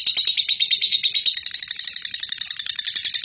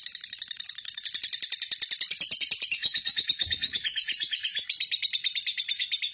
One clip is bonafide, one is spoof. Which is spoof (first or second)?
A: second